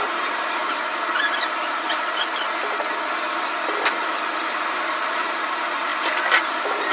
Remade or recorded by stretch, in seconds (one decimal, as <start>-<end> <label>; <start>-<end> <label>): 0.0-0.6 remade; 0.6-4.4 recorded; 4.4-5.9 remade; 5.9-6.9 recorded